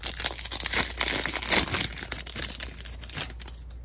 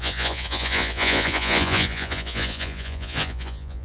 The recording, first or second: first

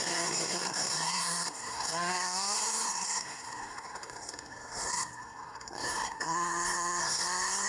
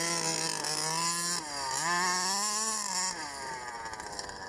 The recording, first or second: second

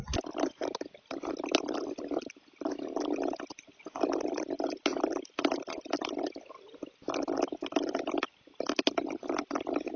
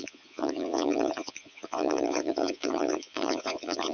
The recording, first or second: first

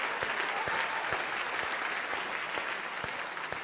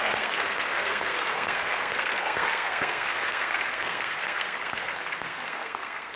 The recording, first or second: first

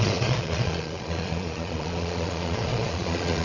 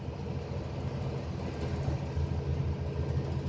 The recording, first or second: second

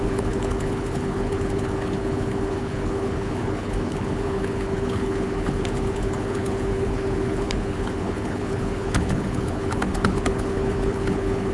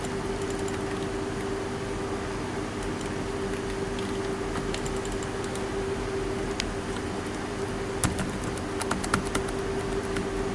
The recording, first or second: second